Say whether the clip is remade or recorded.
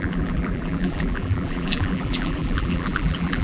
remade